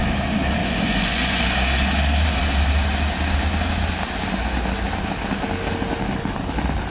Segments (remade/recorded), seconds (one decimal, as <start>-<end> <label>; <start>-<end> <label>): 0.0-0.6 recorded; 0.6-1.4 remade; 1.4-6.9 recorded